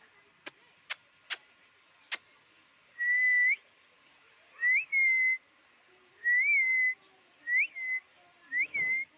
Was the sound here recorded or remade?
recorded